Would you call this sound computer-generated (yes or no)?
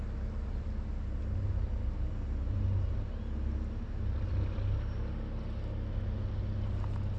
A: no